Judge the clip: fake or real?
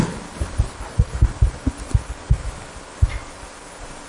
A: real